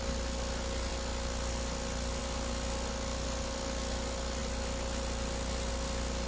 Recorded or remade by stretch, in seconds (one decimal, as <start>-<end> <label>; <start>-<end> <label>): 0.0-6.3 recorded